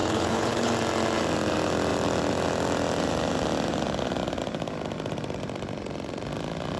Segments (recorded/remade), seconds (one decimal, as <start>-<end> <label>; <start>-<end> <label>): 0.0-0.7 remade; 0.7-6.8 recorded